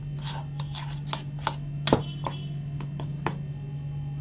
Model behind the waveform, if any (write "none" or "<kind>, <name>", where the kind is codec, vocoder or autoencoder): none